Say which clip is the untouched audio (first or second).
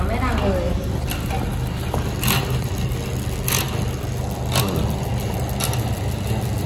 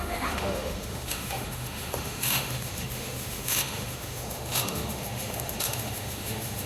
first